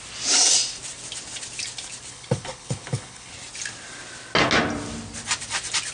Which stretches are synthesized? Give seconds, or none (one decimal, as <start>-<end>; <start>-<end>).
2.1-3.3